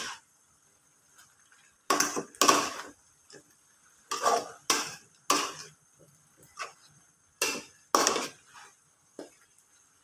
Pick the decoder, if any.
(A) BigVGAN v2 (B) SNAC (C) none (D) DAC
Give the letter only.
C